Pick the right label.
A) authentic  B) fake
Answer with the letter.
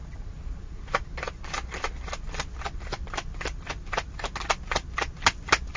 A